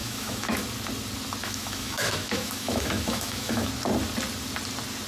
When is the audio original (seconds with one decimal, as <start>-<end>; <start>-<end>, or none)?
0.6-1.4; 3.7-5.1

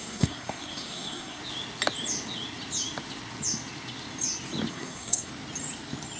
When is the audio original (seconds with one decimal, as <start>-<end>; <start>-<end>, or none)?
1.4-4.7; 5.3-6.2

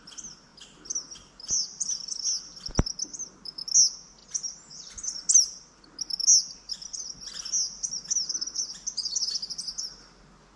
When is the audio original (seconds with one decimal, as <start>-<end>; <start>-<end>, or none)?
0.0-10.6

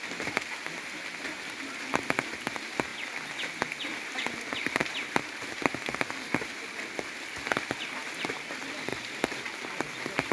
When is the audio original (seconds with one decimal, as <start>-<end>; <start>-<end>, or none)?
0.0-4.8; 7.4-8.9; 9.6-10.3

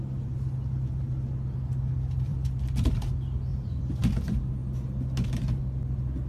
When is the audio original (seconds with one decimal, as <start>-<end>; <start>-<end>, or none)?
0.0-2.3; 2.9-3.5; 4.0-6.3